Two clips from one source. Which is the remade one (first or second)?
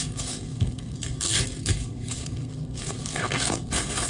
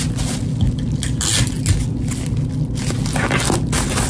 first